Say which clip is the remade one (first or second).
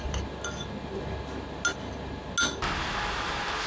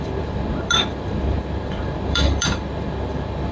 second